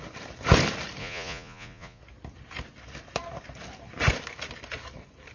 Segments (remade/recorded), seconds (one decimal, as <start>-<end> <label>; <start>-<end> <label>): 0.0-1.0 recorded; 1.0-2.0 remade; 2.0-5.3 recorded